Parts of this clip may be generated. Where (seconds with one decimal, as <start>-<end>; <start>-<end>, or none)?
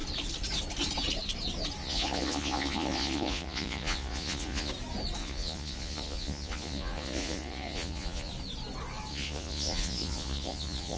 1.8-4.7; 5.2-8.3; 9.1-11.0